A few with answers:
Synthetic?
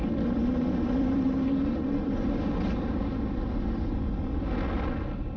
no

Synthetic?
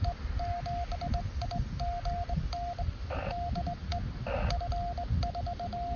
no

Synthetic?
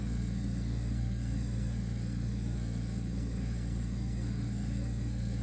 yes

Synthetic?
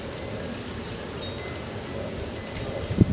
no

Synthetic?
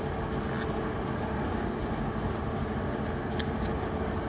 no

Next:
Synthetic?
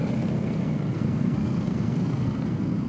yes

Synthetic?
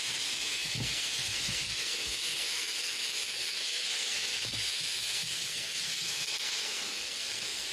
yes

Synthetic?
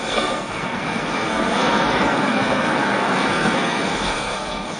yes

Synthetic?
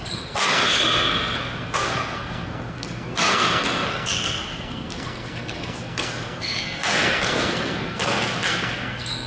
yes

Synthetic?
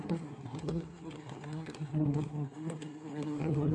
yes